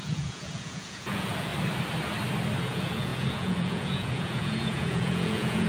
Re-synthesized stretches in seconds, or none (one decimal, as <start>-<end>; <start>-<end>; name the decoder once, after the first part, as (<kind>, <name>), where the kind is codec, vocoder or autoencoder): 0.0-1.5 (vocoder, Vocos); 2.6-5.7